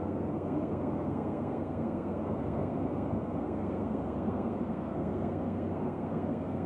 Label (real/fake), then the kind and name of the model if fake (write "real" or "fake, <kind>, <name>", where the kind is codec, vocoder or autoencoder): fake, codec, SNAC